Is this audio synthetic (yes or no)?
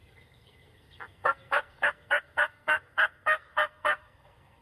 yes